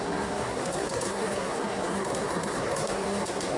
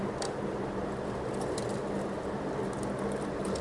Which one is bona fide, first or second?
second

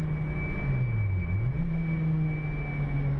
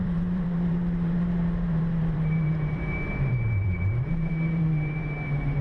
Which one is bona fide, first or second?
first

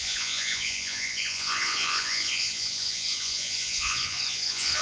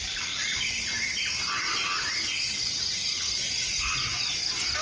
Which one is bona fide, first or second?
second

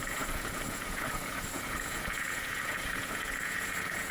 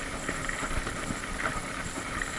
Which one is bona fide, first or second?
second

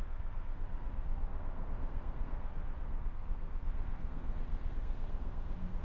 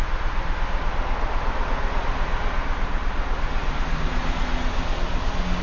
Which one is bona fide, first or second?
second